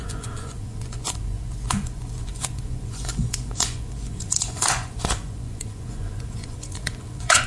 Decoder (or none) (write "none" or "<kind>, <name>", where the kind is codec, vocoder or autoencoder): vocoder, Vocos